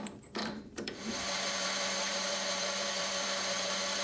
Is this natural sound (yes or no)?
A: no